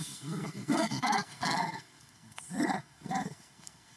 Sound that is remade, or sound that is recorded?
remade